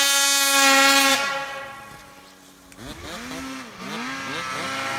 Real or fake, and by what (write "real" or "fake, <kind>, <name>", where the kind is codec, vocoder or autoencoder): real